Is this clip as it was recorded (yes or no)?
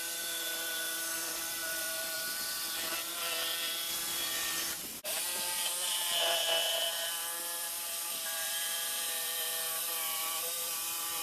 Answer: no